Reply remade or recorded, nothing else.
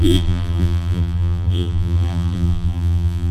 remade